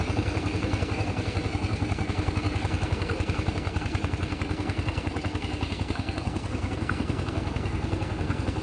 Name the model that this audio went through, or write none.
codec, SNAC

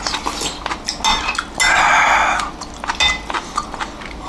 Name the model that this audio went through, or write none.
none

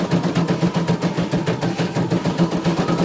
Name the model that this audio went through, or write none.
none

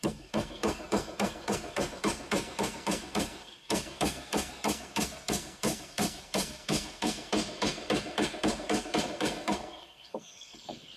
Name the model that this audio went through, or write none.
codec, SNAC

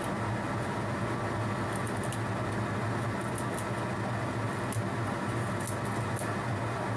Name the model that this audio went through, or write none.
none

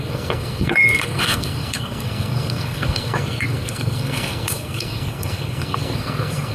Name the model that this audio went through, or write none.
codec, SNAC